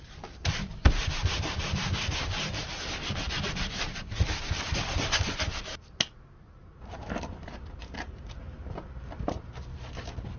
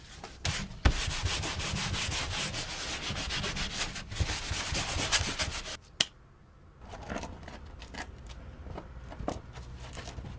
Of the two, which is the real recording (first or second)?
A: second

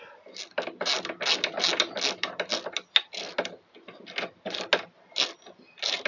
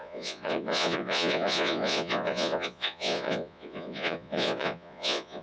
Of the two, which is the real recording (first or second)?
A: first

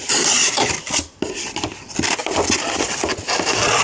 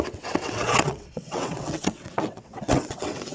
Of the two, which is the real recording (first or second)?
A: first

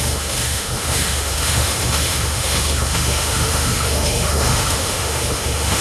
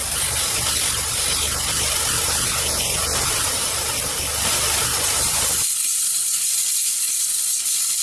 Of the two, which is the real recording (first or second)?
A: second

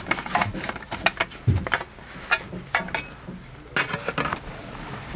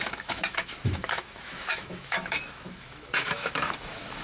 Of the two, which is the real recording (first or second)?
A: first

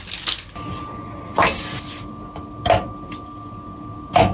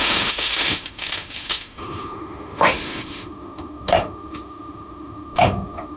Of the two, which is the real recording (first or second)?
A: first